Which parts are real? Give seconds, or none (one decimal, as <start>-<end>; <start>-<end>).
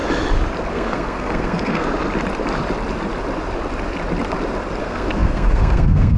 0.0-0.7; 1.9-4.8